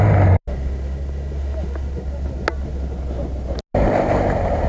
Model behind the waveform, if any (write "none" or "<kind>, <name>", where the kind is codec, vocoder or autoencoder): none